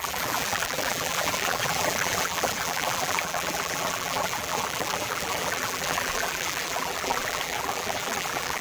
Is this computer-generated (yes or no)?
yes